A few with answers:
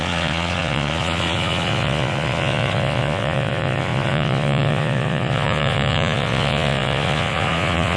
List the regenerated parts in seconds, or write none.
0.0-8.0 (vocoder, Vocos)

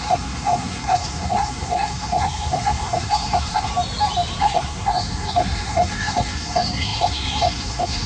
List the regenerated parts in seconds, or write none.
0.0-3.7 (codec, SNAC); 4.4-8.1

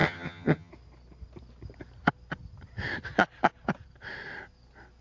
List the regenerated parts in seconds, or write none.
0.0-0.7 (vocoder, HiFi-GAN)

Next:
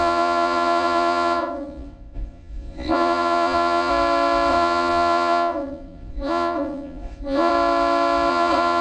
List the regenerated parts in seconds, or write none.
0.0-3.9 (vocoder, Vocos); 4.5-7.5; 8.3-8.8

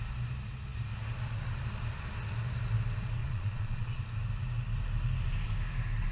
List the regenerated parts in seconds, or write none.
3.2-4.0 (vocoder, Vocos)

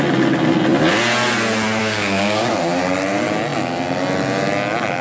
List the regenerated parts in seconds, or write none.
1.8-2.5 (codec, DAC)